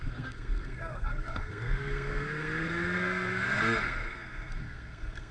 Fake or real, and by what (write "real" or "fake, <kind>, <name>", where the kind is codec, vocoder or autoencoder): fake, codec, SNAC